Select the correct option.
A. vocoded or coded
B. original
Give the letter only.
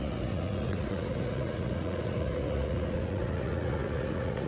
A